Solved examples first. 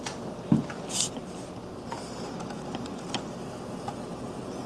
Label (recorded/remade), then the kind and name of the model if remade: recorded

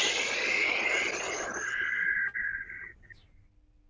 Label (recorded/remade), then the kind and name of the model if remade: recorded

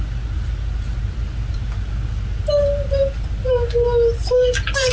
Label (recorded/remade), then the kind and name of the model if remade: recorded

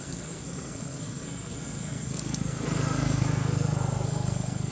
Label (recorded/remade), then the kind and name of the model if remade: remade, codec, SNAC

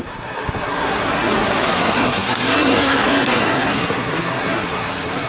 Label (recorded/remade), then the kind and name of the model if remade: remade, codec, SNAC